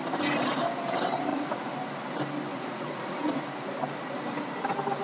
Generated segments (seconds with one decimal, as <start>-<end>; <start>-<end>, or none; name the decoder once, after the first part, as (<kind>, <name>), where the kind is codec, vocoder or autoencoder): 1.3-1.8 (vocoder, Vocos); 2.5-3.4